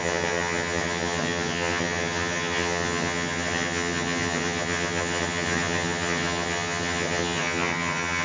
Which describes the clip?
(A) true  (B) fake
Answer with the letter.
B